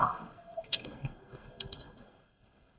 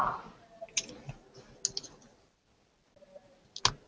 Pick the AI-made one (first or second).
first